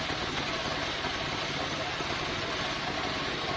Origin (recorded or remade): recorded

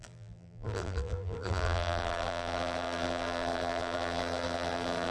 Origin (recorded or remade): remade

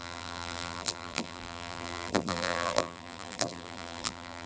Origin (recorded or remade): remade